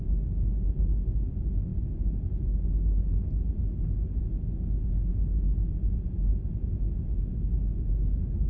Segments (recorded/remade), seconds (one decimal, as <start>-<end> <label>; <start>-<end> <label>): 0.0-8.5 recorded